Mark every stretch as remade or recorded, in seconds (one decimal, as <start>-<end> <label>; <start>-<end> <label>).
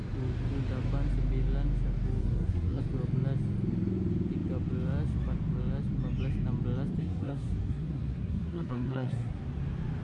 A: 0.0-2.2 recorded; 2.2-2.8 remade; 2.8-7.0 recorded; 7.0-9.4 remade; 9.4-10.0 recorded